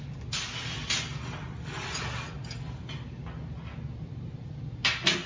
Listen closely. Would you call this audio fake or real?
real